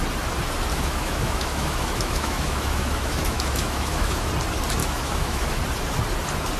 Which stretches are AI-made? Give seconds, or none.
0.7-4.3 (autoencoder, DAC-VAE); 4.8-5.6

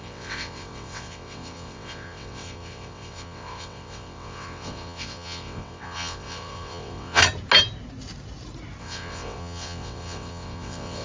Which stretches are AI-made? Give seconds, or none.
0.0-7.2 (vocoder, WaveNeXt); 8.8-11.0

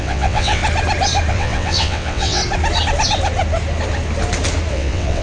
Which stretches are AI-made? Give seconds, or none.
0.0-0.6 (vocoder, WaveNeXt); 1.3-2.4; 4.7-5.2

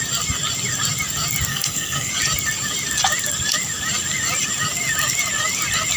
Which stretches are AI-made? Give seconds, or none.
1.5-2.1 (codec, SNAC)

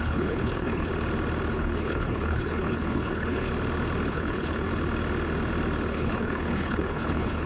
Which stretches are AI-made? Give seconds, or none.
0.0-0.9 (codec, HILCodec); 1.5-3.5; 4.1-4.7; 5.9-7.5

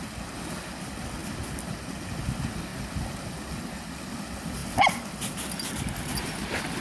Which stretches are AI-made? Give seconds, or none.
none

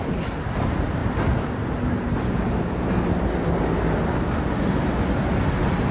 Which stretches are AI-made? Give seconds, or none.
none

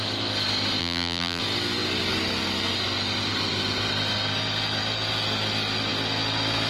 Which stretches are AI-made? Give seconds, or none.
0.8-1.4 (vocoder, BigVGAN v2)